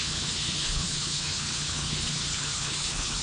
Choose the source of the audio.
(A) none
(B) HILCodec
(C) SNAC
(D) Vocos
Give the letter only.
B